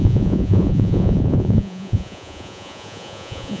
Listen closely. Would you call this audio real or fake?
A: fake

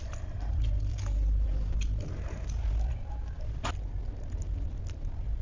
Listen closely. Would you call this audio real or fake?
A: real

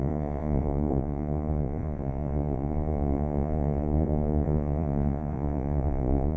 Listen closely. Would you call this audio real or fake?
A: fake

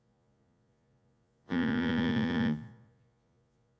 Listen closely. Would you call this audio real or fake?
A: fake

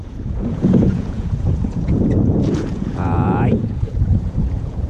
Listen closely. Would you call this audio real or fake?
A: fake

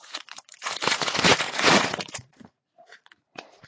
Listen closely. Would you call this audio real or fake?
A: fake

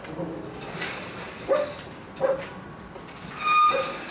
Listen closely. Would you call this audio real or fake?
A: real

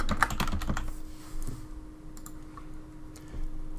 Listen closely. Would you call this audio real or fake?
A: real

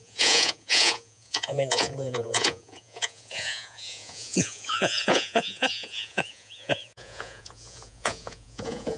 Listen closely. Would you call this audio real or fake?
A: fake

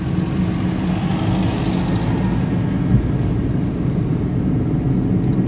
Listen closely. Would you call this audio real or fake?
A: real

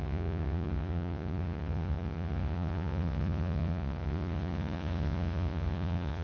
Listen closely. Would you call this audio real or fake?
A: fake